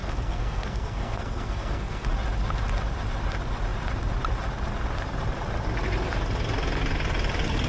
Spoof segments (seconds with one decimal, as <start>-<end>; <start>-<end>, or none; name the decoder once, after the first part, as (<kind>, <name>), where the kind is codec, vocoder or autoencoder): 0.0-2.1 (codec, SNAC)